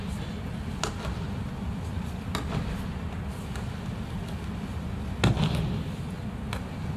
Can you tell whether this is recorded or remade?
recorded